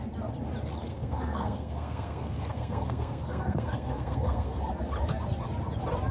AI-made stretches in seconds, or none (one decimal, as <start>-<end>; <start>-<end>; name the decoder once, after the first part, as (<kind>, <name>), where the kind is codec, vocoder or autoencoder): 0.9-4.6 (codec, SNAC)